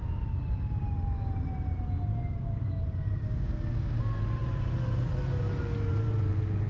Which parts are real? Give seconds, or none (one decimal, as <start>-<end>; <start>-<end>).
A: 1.3-2.1; 4.0-6.7